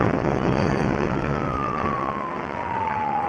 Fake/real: fake